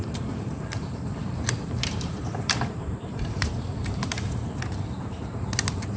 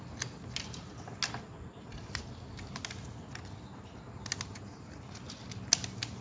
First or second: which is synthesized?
first